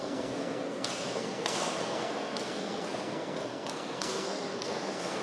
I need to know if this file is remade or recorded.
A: remade